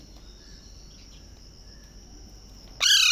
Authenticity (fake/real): real